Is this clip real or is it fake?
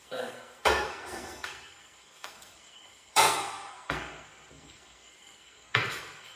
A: fake